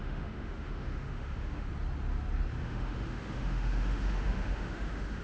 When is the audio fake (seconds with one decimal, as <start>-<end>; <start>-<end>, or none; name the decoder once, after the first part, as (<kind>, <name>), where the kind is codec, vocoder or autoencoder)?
0.0-1.7 (autoencoder, DAC-VAE); 2.6-5.2